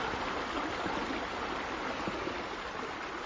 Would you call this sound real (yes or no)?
yes